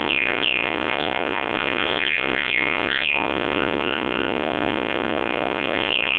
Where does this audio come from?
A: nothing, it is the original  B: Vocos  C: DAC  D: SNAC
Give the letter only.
B